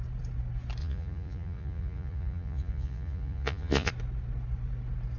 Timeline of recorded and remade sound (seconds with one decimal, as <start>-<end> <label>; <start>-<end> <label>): 0.0-0.8 recorded; 0.8-3.9 remade; 3.9-5.2 recorded